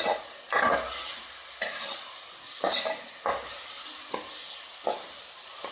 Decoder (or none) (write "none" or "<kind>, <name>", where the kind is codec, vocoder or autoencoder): none